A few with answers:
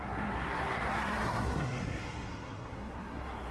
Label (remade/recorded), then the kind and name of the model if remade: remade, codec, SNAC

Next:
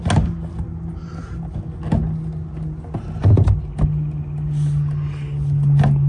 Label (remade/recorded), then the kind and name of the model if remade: recorded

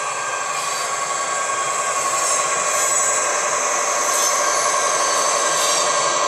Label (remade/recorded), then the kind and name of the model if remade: remade, vocoder, BigVGAN v2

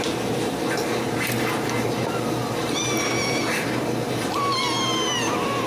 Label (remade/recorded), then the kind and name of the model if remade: recorded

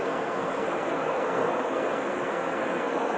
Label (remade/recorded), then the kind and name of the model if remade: remade, codec, SNAC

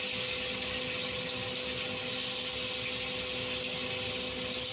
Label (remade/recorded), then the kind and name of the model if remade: recorded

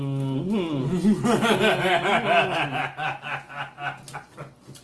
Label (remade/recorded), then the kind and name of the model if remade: recorded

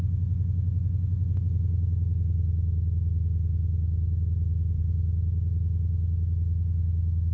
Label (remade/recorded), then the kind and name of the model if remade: recorded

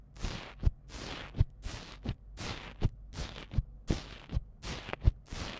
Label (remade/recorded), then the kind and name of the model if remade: recorded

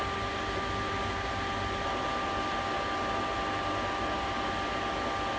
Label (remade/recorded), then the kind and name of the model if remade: recorded